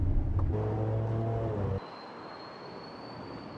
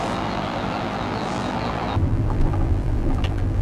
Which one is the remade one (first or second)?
second